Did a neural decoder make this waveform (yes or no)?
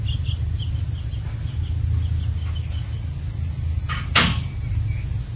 no